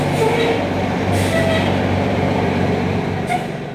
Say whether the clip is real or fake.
fake